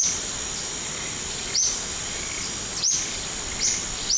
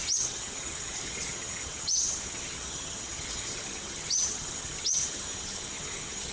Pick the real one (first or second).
first